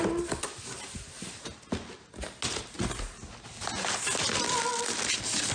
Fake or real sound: real